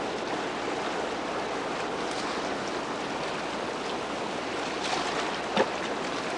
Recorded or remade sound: recorded